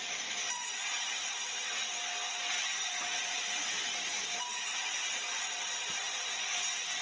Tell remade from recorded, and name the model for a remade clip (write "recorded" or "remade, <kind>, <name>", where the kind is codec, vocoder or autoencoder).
recorded